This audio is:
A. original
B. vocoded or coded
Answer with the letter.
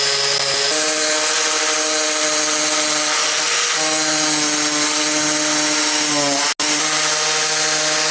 A